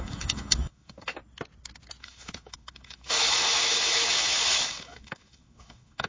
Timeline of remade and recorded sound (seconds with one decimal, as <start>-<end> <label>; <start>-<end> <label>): 0.0-1.2 remade; 1.2-2.0 recorded; 2.0-6.1 remade